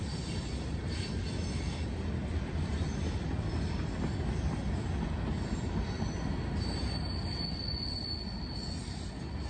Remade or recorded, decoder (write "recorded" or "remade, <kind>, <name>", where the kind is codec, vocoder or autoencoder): recorded